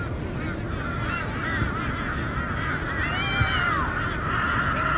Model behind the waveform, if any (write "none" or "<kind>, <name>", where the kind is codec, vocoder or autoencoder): none